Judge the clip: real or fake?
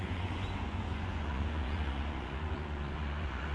fake